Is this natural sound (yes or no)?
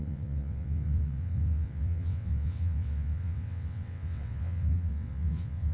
no